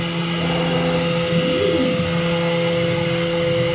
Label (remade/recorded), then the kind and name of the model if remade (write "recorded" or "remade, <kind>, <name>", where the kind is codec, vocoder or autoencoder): recorded